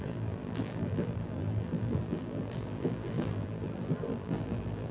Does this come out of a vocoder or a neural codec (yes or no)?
yes